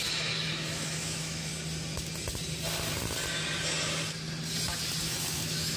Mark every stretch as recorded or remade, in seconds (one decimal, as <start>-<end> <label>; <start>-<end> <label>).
0.0-1.5 remade; 1.5-5.0 recorded; 5.0-5.8 remade